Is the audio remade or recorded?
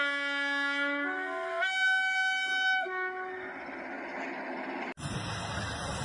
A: recorded